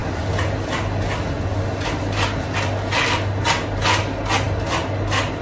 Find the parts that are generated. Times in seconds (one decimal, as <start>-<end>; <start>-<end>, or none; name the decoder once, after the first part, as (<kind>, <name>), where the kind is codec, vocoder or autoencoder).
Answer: none